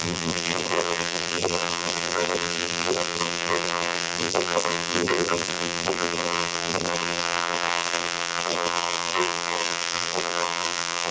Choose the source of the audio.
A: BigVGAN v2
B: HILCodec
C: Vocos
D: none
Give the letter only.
A